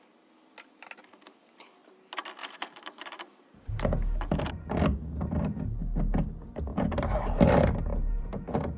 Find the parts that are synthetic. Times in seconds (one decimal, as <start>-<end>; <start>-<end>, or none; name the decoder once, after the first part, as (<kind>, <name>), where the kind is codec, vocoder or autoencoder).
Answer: 2.4-3.8 (vocoder, BigVGAN v2); 6.7-7.3; 7.9-8.8